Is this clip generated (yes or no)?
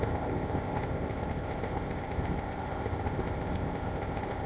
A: yes